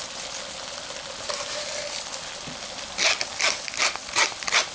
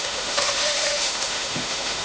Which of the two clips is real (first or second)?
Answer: first